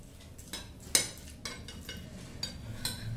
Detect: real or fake real